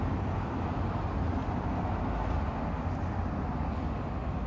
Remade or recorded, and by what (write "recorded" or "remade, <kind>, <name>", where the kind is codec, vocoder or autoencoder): recorded